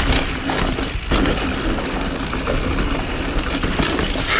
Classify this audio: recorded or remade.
recorded